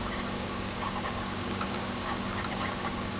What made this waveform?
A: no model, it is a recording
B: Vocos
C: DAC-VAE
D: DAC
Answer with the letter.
D